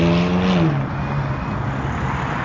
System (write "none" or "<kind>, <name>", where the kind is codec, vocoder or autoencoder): none